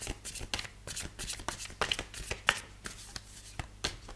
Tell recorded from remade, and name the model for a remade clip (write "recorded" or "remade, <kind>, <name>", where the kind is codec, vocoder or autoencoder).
recorded